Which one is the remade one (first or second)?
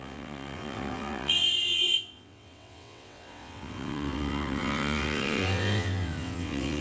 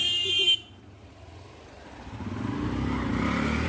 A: first